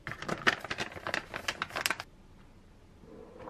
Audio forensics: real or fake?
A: real